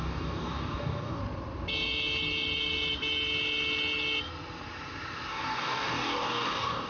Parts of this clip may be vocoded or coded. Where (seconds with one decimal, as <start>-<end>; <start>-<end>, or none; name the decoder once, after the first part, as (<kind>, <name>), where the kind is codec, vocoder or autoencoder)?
0.0-1.2 (codec, DAC); 5.3-6.9

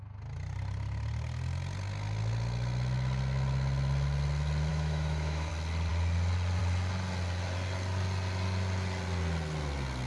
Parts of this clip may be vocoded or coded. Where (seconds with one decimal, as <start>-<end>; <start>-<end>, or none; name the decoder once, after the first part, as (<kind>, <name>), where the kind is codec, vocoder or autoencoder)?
4.7-5.5 (autoencoder, DAC-VAE)

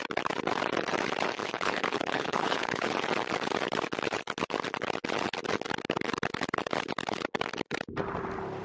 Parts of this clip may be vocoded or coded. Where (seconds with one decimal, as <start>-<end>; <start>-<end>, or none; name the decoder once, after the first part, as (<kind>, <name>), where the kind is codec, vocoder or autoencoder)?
1.4-2.9 (codec, HILCodec)

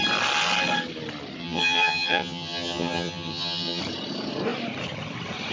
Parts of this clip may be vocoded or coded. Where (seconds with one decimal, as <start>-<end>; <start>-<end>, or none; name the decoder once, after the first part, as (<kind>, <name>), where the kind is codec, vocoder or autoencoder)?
1.4-3.8 (vocoder, HiFi-GAN)

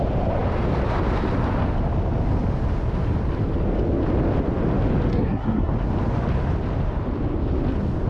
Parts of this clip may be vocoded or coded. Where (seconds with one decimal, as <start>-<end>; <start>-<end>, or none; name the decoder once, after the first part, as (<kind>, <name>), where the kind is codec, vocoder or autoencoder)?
5.1-5.7 (codec, SNAC)